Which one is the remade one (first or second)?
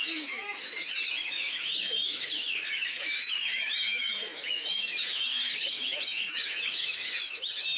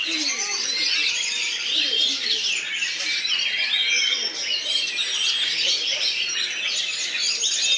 first